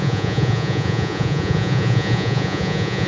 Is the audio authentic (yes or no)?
no